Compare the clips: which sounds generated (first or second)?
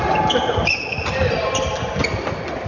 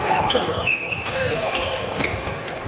second